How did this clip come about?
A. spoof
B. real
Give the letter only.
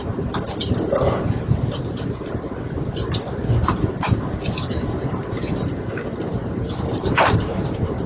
B